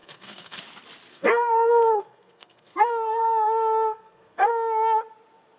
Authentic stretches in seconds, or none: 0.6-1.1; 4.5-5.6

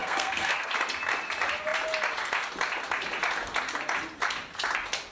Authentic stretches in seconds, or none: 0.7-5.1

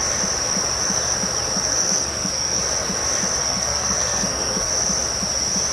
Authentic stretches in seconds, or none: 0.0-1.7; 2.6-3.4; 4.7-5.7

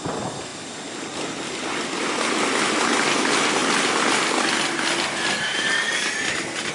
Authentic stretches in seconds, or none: 0.0-6.7